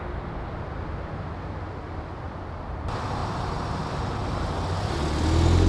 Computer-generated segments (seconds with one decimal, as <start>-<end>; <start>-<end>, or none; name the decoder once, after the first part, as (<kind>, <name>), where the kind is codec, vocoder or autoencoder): 3.2-3.8 (vocoder, BigVGAN v2)